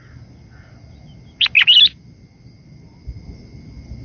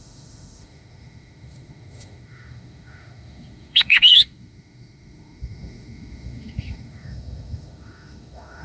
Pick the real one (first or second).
first